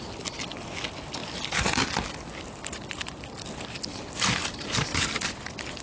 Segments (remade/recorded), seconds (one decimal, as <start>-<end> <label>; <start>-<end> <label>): 0.0-3.9 recorded; 3.9-4.5 remade; 4.5-5.8 recorded